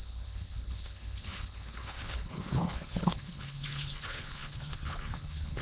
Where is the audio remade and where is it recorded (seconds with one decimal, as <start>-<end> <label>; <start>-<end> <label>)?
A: 0.0-5.6 remade